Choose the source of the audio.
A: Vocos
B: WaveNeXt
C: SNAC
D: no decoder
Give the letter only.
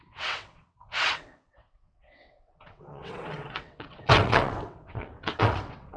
B